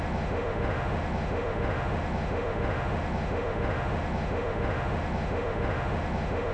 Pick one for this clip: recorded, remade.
remade